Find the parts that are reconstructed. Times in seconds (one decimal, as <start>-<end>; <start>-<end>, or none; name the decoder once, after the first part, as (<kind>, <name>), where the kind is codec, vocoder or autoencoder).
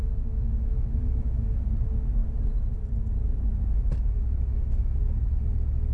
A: 0.0-1.6 (autoencoder, DAC-VAE)